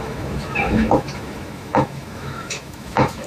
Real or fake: fake